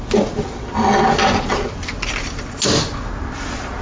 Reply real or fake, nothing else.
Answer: real